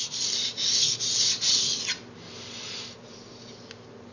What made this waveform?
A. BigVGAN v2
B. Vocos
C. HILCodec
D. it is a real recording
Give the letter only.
D